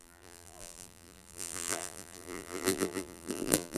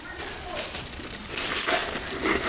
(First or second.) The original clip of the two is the second